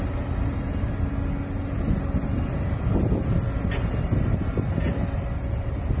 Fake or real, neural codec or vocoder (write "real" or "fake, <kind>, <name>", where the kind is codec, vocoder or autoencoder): real